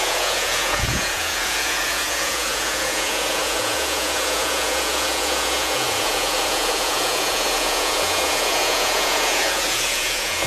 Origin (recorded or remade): remade